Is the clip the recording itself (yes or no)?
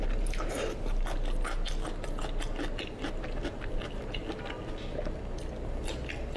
yes